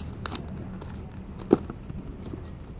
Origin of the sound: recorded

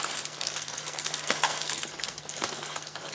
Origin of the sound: remade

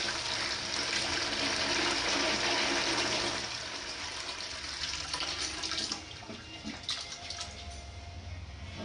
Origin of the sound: recorded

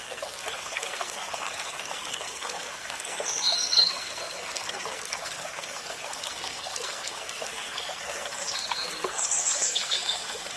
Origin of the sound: remade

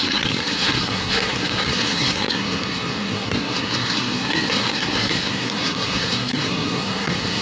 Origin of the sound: remade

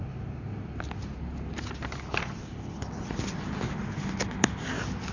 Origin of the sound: recorded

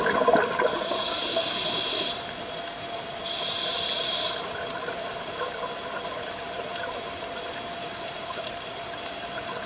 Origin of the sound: remade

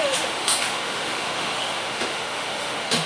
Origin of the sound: remade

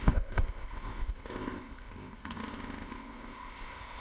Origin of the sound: remade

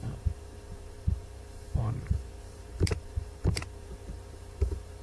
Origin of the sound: remade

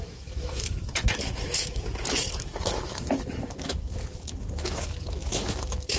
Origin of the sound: remade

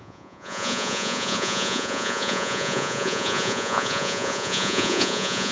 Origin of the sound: remade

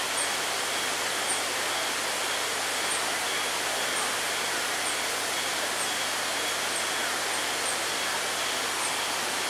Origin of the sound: recorded